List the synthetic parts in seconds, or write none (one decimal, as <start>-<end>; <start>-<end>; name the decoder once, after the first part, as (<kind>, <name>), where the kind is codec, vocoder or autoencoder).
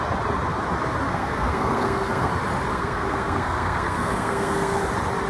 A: 1.1-2.3 (codec, SNAC); 2.7-4.8